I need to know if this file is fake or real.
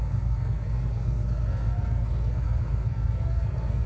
fake